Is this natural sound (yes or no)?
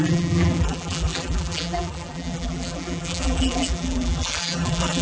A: no